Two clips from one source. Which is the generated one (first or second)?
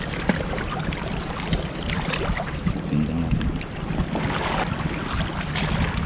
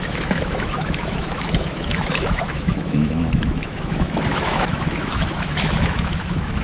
second